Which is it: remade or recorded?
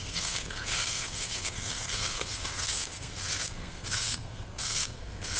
remade